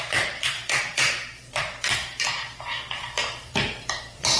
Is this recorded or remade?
remade